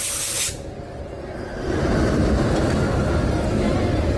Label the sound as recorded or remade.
recorded